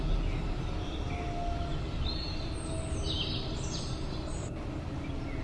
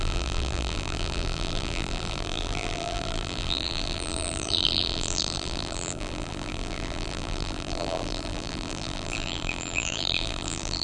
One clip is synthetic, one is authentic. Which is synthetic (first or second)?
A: second